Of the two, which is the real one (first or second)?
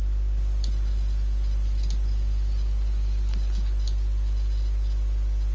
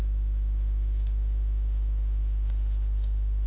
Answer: first